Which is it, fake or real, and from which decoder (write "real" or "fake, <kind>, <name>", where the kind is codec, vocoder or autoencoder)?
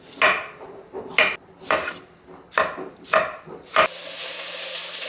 real